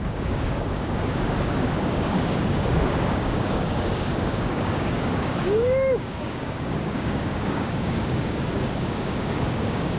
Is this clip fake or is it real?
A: fake